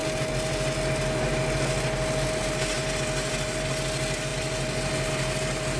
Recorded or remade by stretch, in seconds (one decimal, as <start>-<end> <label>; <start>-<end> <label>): 0.0-5.8 recorded